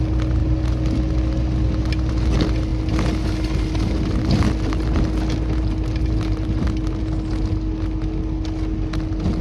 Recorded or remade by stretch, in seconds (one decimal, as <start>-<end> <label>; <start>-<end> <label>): 0.0-9.4 recorded